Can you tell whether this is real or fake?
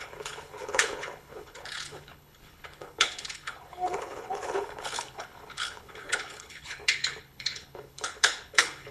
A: fake